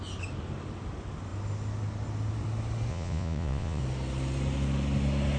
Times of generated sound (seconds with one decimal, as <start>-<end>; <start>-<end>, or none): 2.9-3.8